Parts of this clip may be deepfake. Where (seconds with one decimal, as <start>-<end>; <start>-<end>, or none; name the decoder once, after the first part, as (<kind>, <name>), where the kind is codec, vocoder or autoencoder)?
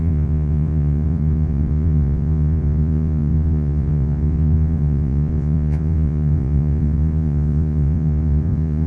0.0-8.9 (vocoder, Vocos)